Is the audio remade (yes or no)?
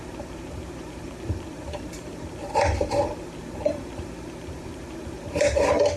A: yes